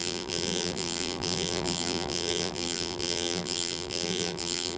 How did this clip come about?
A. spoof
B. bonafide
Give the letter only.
A